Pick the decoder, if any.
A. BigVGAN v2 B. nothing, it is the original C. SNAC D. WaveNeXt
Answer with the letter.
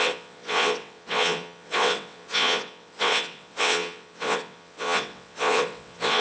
D